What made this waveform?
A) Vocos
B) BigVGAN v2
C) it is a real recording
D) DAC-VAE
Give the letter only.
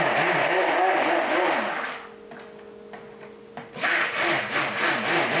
C